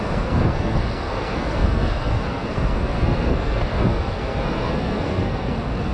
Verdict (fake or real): fake